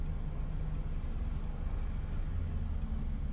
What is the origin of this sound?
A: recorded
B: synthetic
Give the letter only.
A